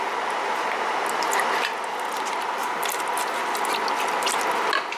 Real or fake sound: real